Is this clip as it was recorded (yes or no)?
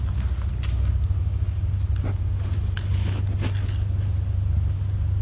yes